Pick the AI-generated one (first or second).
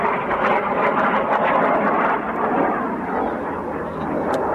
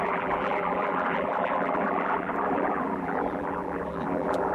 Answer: second